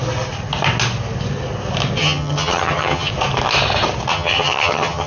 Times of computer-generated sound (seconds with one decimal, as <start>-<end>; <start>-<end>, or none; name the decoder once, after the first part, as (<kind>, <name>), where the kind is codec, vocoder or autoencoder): 2.0-3.1 (vocoder, HiFi-GAN); 4.1-5.1